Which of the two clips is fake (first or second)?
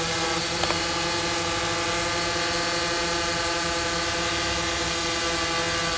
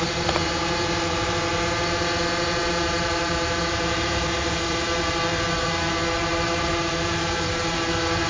second